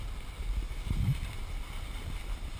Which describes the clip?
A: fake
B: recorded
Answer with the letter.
B